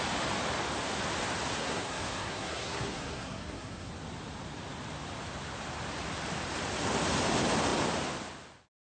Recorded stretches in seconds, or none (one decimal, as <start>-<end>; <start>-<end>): 0.0-1.6; 3.9-9.0